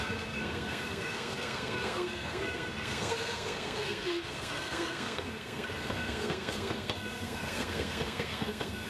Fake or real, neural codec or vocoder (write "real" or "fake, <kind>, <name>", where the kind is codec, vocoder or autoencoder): fake, codec, SNAC